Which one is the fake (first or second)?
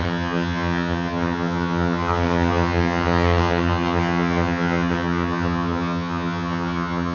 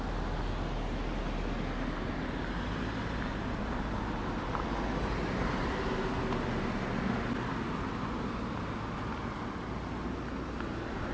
first